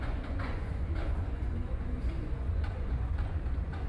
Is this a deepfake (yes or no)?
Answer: yes